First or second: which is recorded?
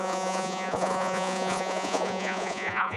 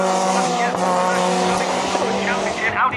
second